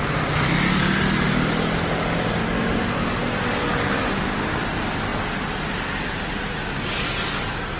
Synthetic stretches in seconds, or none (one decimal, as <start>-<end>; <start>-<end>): none